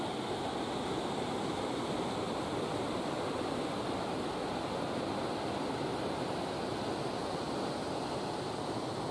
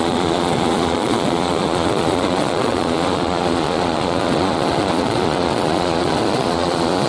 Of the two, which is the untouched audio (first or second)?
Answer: first